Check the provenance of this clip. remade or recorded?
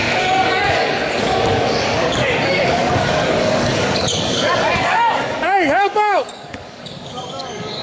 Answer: remade